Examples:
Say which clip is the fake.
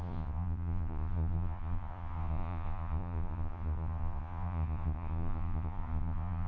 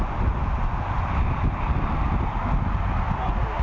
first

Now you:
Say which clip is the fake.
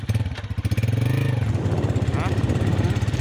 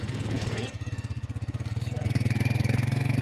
second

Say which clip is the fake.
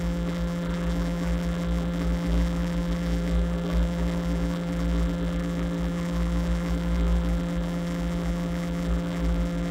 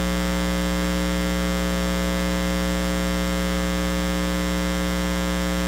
first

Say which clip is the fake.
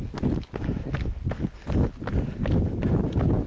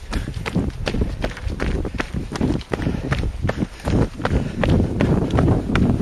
second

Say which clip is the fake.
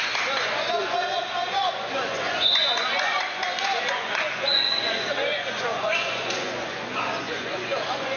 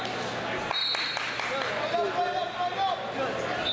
first